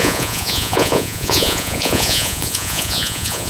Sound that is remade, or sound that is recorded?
remade